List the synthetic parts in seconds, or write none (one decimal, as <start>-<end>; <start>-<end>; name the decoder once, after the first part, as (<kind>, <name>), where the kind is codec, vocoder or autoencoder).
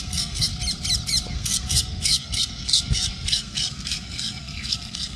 0.0-0.5 (codec, SNAC); 1.3-5.2